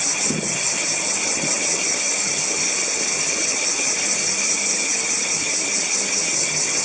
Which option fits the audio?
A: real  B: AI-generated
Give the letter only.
B